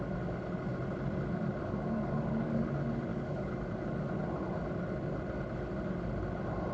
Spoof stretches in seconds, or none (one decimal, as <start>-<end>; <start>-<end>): 1.6-2.7; 3.1-4.1